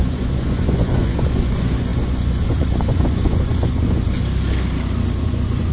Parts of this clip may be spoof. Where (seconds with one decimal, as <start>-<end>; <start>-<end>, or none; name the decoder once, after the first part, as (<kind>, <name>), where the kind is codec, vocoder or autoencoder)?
0.0-4.2 (vocoder, Vocos); 5.2-5.7